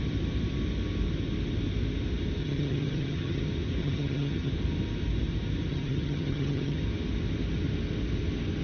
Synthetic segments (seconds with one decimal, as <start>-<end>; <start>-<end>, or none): 2.4-3.4; 3.8-4.5; 5.7-6.8

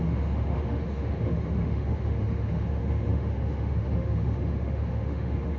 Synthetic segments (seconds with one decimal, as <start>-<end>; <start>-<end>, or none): 0.0-5.6

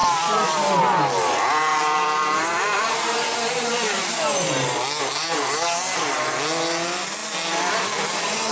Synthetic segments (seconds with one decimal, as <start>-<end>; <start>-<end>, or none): 0.0-0.8; 1.7-4.2

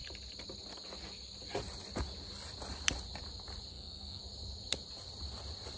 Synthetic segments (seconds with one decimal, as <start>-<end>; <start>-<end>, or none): 3.7-4.2

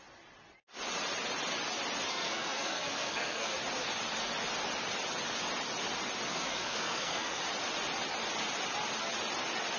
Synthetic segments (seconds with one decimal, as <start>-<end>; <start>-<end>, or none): 2.1-3.5; 6.3-7.4